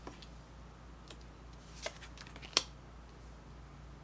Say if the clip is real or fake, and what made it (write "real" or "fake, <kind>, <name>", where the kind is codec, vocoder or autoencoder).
real